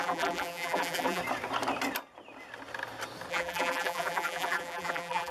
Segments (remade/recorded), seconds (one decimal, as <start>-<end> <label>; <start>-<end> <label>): 0.0-1.2 remade; 1.2-3.3 recorded; 3.3-5.3 remade